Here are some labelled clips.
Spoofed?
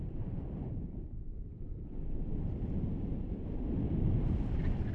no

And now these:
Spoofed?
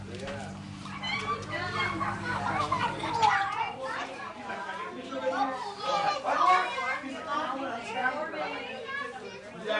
yes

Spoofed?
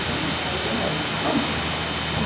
no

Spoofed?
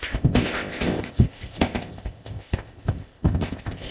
yes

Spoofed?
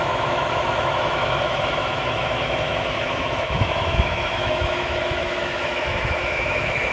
yes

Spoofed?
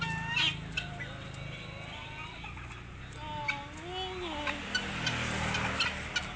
no